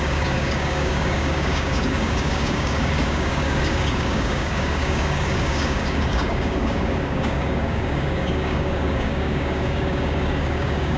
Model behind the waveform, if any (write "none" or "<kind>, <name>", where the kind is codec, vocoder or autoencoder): codec, DAC